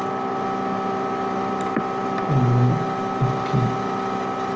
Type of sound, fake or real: real